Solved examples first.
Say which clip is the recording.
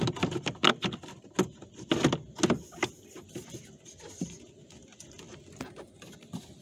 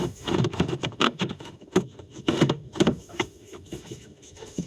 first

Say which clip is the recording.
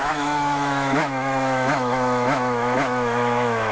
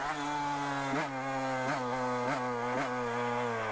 second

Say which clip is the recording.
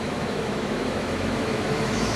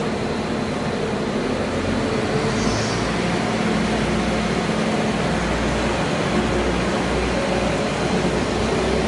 second